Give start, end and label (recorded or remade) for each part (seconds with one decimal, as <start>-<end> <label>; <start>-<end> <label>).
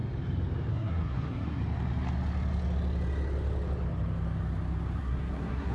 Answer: 0.0-0.7 recorded; 0.7-1.6 remade; 1.6-5.0 recorded; 5.0-5.7 remade